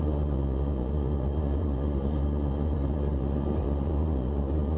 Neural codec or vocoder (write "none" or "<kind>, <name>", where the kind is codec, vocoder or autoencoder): vocoder, Vocos